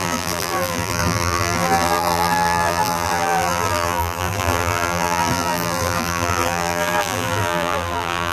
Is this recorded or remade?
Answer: remade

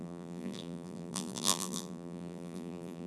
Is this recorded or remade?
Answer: remade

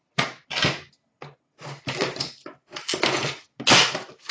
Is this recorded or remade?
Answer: recorded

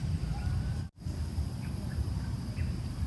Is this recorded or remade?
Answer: remade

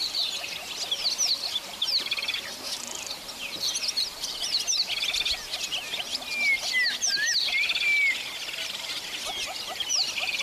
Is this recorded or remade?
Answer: recorded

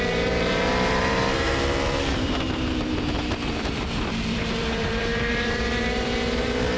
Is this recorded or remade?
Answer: remade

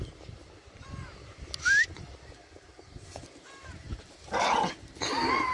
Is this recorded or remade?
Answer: recorded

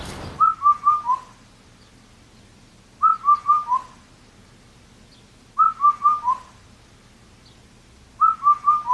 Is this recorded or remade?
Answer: recorded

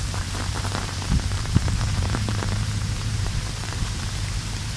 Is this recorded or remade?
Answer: remade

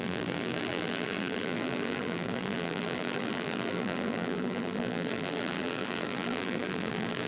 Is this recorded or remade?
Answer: remade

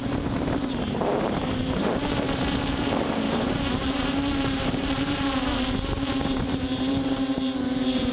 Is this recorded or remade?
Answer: remade